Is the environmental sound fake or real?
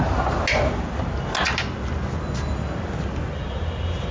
real